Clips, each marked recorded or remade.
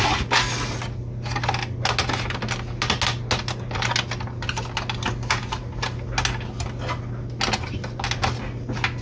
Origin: recorded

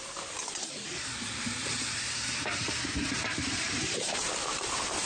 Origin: remade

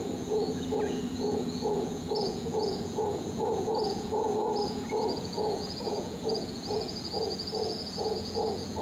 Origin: remade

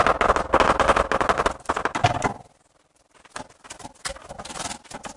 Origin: recorded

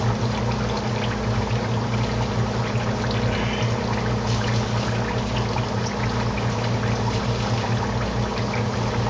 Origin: recorded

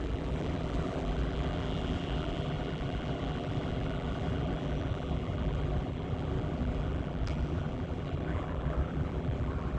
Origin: remade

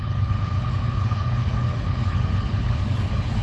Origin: remade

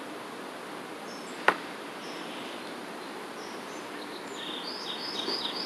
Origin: recorded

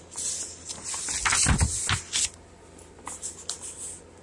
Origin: recorded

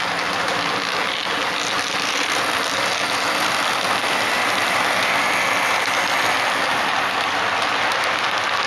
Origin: recorded